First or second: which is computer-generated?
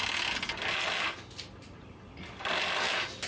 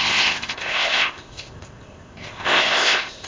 second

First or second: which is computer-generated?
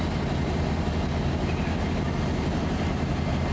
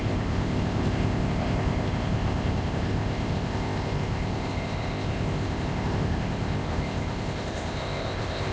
second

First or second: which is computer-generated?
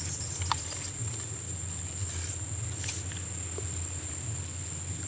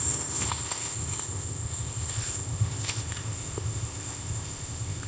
second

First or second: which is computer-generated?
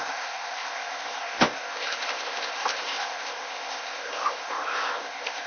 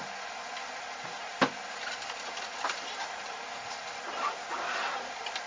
first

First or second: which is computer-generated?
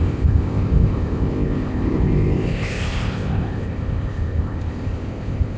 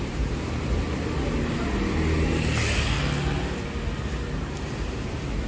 first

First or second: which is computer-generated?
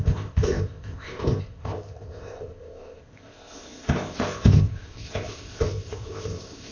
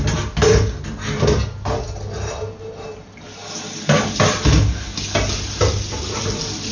first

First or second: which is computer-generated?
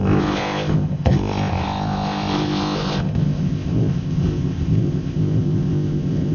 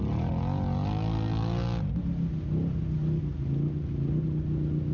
first